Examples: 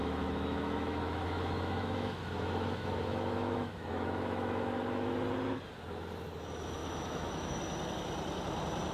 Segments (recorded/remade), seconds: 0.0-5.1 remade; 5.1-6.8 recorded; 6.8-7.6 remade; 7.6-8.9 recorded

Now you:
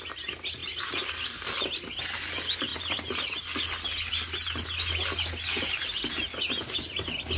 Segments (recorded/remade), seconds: 0.0-7.4 recorded

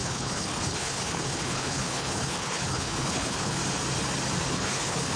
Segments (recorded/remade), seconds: 0.0-3.6 remade; 3.6-4.5 recorded; 4.5-5.2 remade